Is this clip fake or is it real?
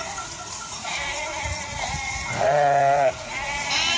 fake